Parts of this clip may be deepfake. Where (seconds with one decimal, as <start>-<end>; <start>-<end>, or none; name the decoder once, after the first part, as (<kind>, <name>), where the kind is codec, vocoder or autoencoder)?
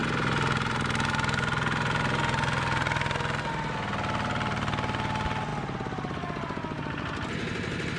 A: none